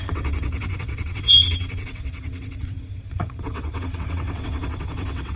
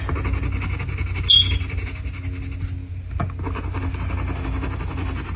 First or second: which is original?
second